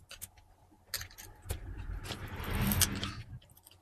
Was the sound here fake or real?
real